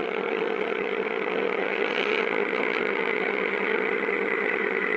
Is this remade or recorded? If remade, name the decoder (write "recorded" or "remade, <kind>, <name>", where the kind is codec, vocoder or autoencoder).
remade, vocoder, HiFi-GAN